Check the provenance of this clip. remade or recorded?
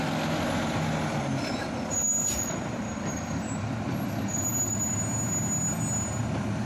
recorded